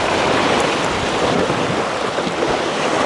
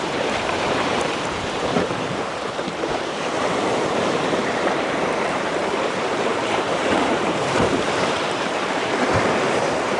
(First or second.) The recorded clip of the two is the first